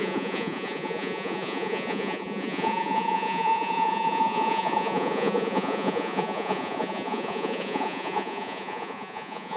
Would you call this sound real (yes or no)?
no